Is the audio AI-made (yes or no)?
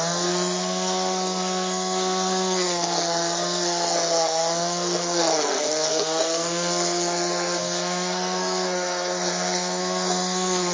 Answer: yes